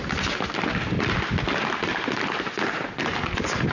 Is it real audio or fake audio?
real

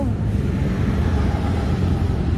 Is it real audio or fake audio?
real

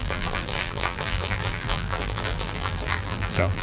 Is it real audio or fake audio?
fake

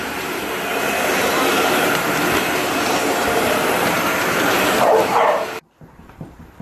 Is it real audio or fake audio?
fake